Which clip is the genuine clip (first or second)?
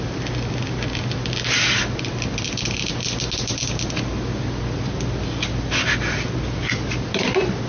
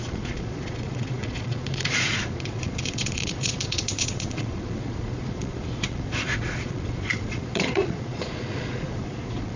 first